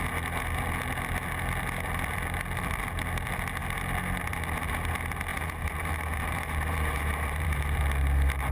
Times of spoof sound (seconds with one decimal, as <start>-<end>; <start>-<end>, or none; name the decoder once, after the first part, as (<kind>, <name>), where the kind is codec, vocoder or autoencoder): 5.3-7.8 (vocoder, BigVGAN v2)